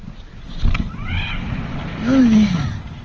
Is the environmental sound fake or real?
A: real